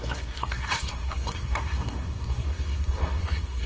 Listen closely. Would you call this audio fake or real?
fake